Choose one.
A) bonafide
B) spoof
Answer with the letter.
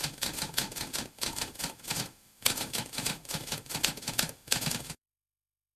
B